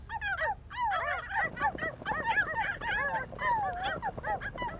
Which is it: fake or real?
real